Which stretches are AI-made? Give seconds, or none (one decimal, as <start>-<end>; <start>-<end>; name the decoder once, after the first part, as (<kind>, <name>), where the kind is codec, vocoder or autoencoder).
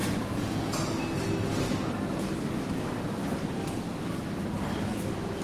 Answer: none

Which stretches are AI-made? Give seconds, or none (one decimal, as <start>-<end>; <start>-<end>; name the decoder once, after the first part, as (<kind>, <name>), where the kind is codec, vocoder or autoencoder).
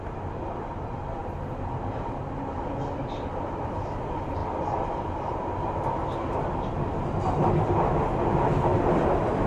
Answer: none